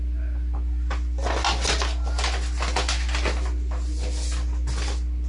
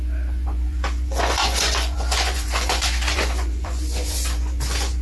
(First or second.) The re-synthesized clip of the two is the second